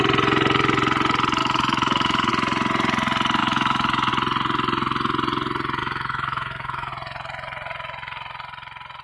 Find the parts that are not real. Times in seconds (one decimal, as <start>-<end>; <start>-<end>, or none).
1.4-2.3; 3.4-4.1; 5.8-6.9